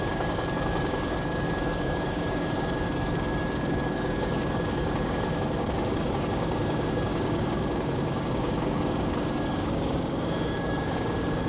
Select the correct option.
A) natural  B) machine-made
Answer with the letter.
B